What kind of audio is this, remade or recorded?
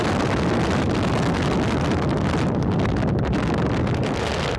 recorded